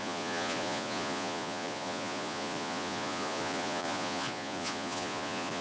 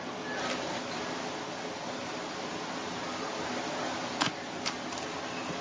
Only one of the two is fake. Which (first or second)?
first